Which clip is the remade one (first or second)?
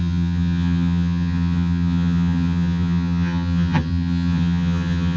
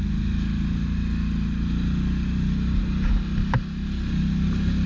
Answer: first